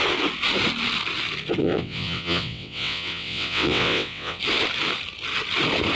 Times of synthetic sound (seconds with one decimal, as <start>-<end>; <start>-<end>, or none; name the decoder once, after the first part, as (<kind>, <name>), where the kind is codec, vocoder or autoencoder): 1.6-4.4 (vocoder, WaveNeXt)